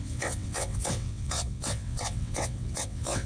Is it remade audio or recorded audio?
remade